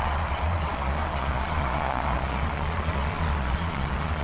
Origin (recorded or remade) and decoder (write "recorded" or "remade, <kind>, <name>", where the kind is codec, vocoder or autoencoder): remade, vocoder, Vocos